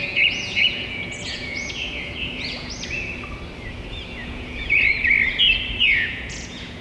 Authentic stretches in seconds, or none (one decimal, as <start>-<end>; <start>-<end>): 2.7-4.2; 4.9-5.8